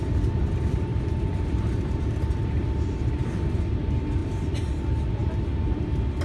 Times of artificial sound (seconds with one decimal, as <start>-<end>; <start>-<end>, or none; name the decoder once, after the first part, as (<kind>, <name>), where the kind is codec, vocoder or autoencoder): none